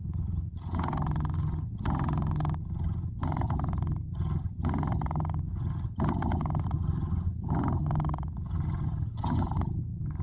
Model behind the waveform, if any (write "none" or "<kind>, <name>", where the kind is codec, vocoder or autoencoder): vocoder, HiFi-GAN